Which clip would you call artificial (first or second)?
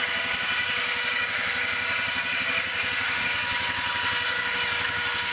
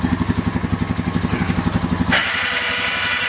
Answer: first